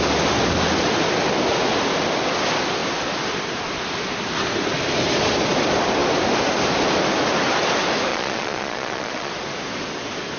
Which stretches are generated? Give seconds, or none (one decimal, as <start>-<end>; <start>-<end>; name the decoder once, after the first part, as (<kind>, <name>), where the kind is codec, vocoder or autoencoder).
8.1-9.3 (vocoder, Vocos)